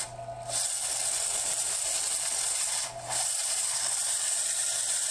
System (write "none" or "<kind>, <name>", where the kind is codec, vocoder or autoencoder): none